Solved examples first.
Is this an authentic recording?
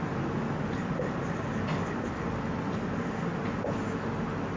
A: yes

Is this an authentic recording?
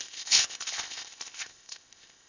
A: no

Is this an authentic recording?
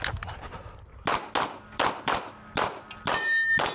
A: yes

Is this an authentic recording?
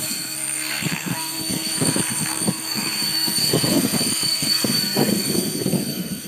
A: no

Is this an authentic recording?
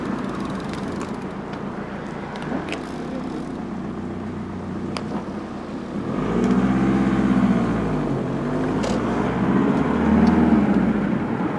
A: yes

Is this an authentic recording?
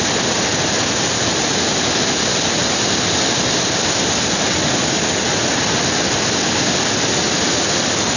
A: yes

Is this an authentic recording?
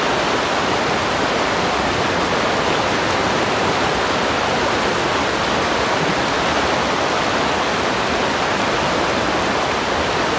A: yes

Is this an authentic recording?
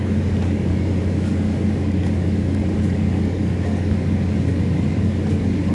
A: no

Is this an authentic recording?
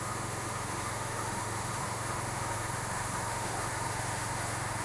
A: no